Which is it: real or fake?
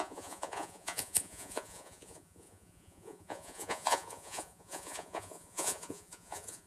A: fake